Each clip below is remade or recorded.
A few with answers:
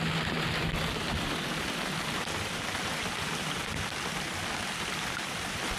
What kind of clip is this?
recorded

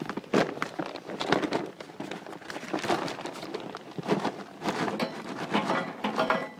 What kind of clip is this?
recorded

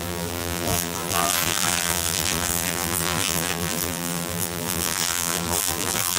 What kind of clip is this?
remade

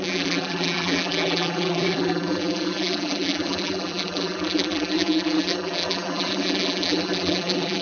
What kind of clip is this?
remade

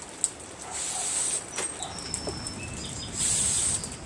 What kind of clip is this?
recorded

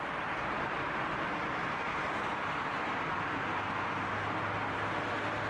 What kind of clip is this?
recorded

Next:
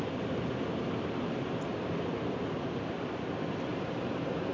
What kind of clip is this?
recorded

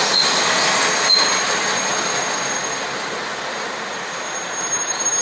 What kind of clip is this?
recorded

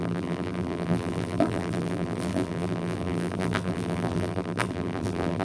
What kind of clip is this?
remade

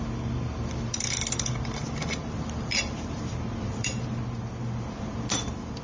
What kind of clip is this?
remade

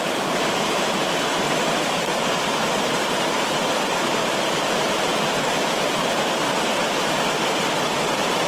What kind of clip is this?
remade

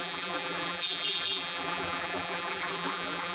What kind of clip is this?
remade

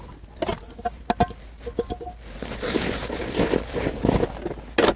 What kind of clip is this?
recorded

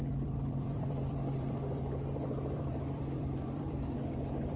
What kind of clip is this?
remade